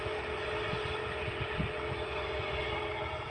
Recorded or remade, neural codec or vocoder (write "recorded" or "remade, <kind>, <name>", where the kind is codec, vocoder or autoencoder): recorded